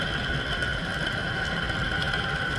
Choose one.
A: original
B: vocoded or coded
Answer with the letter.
A